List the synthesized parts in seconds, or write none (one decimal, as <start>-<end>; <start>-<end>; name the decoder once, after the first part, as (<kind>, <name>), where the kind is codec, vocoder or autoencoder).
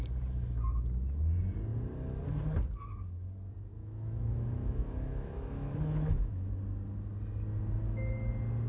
3.7-6.5 (autoencoder, DAC-VAE)